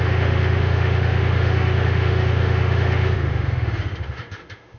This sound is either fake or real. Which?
fake